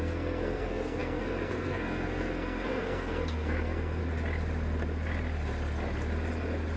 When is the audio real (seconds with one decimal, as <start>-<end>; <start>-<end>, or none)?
4.0-6.8